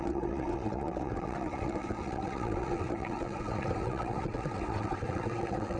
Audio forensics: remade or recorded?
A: remade